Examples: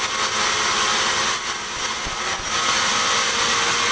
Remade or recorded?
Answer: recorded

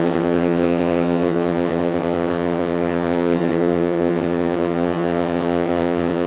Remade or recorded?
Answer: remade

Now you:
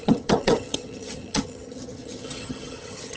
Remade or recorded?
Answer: remade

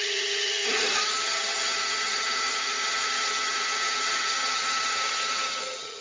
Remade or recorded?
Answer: remade